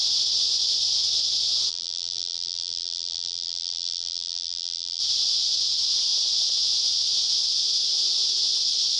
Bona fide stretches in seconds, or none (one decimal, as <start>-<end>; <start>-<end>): 0.0-1.7; 5.0-9.0